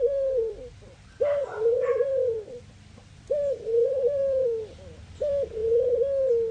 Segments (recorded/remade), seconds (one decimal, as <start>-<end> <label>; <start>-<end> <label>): 0.0-5.6 remade; 5.6-6.5 recorded

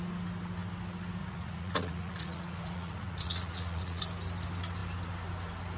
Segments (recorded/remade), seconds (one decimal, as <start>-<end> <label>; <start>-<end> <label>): 0.0-1.2 recorded; 1.2-4.0 remade; 4.0-5.8 recorded

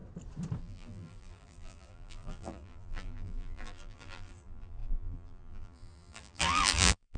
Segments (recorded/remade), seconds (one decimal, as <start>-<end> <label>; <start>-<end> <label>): 0.0-0.6 recorded; 0.6-7.2 remade

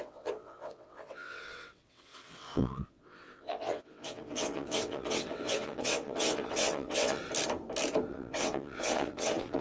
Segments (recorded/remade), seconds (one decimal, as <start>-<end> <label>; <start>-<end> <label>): 0.0-7.2 remade; 7.2-8.1 recorded; 8.1-9.6 remade

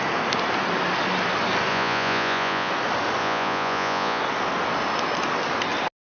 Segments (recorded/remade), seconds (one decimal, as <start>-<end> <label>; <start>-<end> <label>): 0.0-1.7 recorded; 1.7-2.7 remade; 2.7-3.2 recorded; 3.2-4.2 remade; 4.2-6.2 recorded

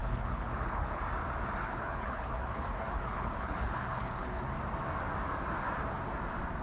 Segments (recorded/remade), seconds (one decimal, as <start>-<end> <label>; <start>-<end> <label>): 0.0-1.0 remade; 1.0-1.6 recorded; 1.6-4.5 remade; 4.5-6.6 recorded